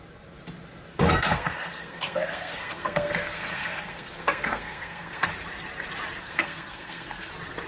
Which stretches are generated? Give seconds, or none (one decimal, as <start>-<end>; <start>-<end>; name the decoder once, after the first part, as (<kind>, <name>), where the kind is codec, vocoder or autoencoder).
0.9-5.3 (codec, SNAC); 6.2-7.3